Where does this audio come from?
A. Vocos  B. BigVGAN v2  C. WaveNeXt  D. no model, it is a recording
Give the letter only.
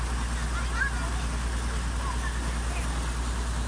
D